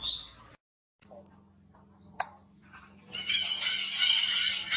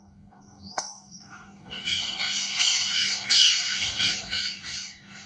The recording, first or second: first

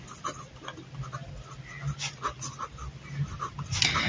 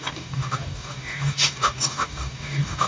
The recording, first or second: first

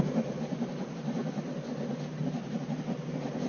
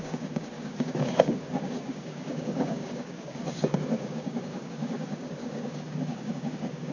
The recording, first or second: first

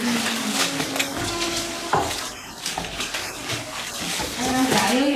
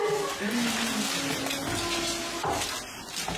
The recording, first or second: second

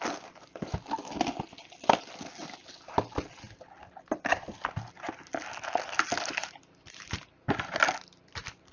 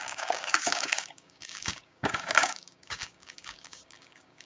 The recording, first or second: first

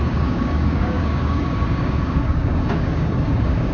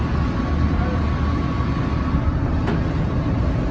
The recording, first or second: second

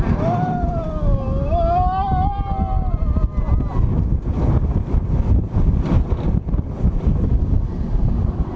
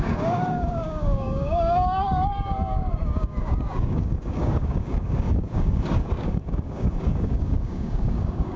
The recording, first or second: first